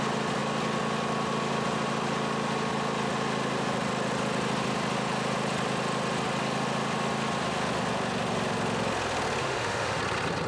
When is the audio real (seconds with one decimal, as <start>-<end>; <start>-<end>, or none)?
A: 0.0-9.4; 10.0-10.5